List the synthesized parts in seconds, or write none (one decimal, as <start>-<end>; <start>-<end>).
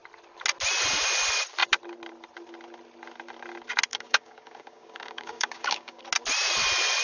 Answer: 3.9-6.0